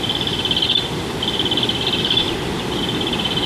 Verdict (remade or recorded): recorded